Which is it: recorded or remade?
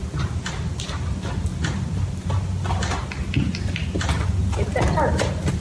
recorded